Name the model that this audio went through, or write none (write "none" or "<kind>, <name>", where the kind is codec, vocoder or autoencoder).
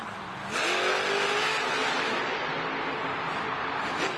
none